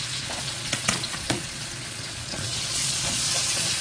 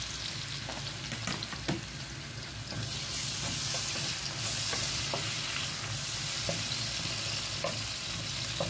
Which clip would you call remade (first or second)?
first